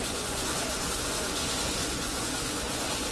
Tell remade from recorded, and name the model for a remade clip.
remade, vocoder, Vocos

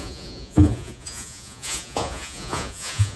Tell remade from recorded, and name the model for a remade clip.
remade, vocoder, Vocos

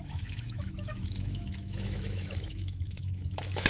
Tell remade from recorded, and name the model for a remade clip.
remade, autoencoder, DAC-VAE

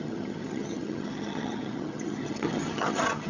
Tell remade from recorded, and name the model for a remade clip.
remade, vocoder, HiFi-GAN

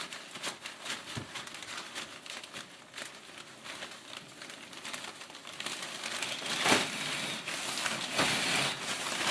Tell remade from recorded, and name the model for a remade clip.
recorded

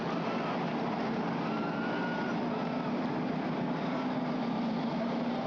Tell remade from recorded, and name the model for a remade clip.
recorded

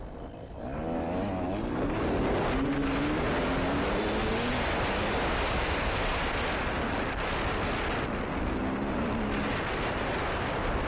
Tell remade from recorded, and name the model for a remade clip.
recorded